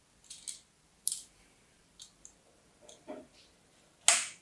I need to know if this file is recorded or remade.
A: recorded